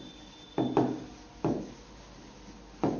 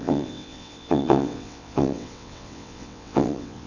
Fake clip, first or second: second